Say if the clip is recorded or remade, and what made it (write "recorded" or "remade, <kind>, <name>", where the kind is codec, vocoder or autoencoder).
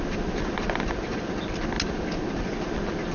recorded